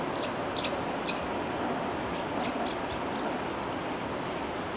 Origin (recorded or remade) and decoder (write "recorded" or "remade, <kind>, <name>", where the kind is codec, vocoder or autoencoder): recorded